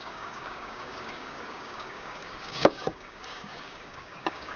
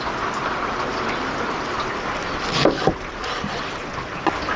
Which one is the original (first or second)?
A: second